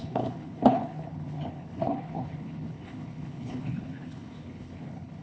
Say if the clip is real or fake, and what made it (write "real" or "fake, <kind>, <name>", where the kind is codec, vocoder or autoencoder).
fake, codec, HILCodec